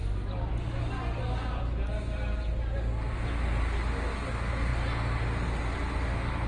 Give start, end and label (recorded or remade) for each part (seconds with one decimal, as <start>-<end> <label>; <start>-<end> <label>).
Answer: 0.0-6.5 recorded